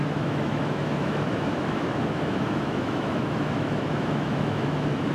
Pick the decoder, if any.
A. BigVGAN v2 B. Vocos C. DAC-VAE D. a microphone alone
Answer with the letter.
C